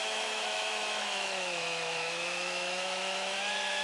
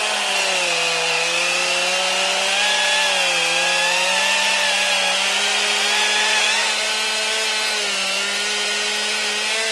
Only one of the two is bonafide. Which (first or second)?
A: second